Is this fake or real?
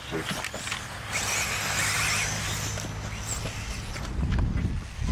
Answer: real